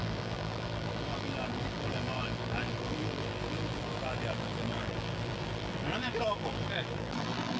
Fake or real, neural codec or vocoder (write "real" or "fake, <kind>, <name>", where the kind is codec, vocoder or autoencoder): fake, vocoder, BigVGAN v2